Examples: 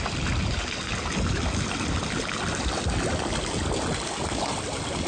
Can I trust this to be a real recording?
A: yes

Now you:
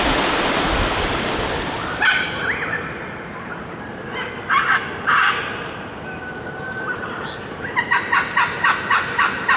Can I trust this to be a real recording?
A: yes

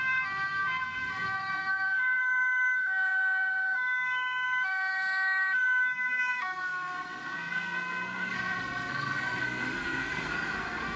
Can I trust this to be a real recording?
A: no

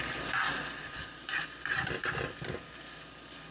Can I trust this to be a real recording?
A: yes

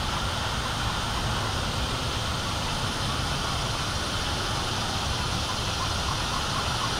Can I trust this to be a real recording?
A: yes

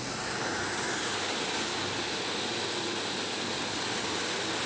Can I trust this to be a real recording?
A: yes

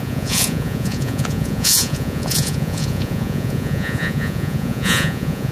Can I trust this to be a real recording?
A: no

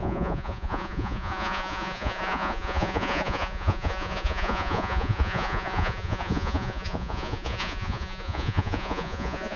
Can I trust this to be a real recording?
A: no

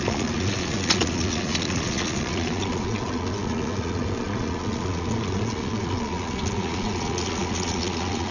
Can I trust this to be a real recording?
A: no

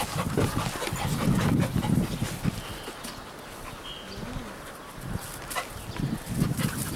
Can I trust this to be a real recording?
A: yes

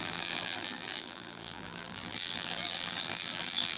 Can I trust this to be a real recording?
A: no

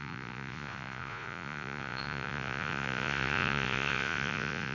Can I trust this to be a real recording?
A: no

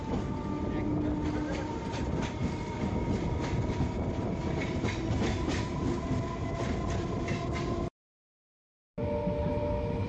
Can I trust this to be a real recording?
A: yes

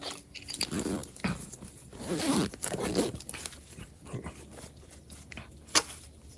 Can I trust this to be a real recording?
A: yes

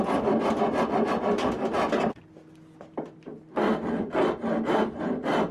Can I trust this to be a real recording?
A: yes